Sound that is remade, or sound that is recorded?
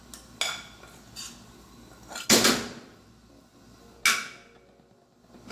recorded